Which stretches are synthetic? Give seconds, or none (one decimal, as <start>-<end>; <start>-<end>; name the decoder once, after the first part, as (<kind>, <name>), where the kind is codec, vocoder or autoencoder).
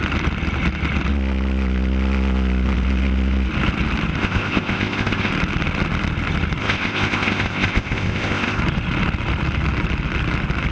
4.2-5.3 (codec, ZipCodec); 6.6-8.6